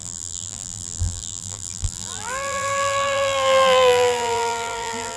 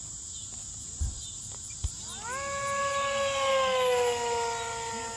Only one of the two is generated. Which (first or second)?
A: first